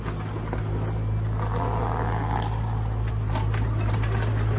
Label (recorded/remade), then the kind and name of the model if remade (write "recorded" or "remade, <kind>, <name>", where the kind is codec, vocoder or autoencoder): recorded